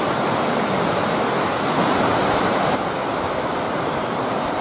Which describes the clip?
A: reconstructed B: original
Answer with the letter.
A